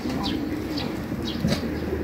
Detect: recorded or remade recorded